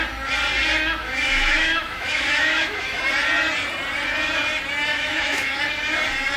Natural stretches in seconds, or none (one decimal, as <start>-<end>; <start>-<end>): 0.0-1.0; 3.0-4.9; 5.6-6.4